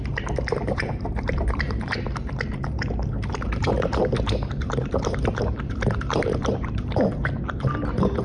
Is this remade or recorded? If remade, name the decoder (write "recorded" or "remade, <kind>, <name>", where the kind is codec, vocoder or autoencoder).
remade, vocoder, BigVGAN v2